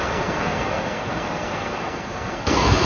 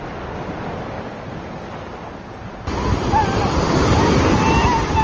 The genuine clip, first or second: second